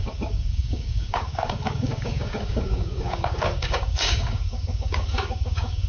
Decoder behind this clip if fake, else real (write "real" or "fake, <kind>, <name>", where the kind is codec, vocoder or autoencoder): fake, codec, DAC